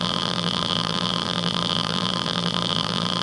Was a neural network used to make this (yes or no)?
yes